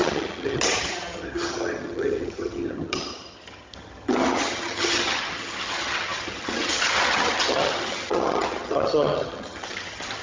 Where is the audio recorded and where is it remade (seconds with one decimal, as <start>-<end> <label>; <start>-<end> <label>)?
0.0-10.2 remade